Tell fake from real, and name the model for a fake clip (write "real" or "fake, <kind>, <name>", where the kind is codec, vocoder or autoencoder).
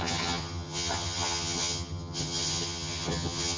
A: fake, vocoder, HiFi-GAN